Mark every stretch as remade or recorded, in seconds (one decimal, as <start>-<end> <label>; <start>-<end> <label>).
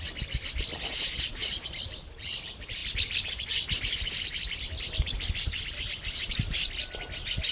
0.0-0.9 recorded; 0.9-1.7 remade; 1.7-7.5 recorded